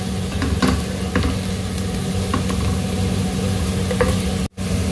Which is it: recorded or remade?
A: recorded